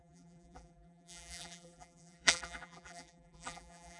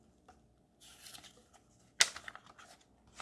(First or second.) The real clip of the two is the second